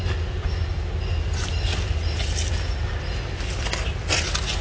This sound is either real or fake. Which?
real